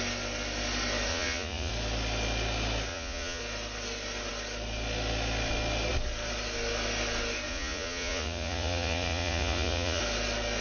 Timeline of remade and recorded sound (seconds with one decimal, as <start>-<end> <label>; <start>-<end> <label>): 0.0-1.1 recorded; 1.1-1.7 remade; 1.7-2.9 recorded; 2.9-3.4 remade; 3.4-7.5 recorded; 7.5-10.0 remade; 10.0-10.6 recorded